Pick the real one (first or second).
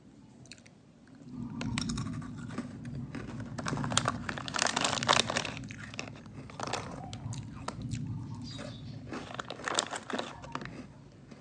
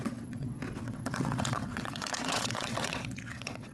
first